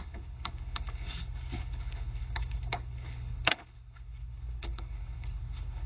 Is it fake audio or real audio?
fake